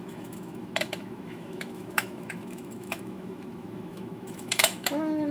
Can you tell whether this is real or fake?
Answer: fake